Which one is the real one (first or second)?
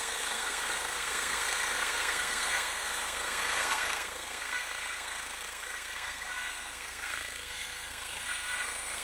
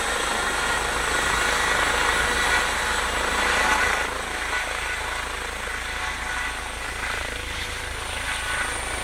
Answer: second